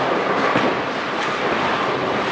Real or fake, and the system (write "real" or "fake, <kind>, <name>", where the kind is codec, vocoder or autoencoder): real